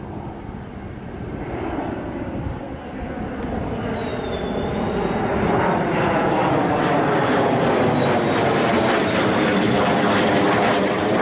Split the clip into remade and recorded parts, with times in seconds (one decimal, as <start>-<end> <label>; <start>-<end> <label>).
0.0-11.2 recorded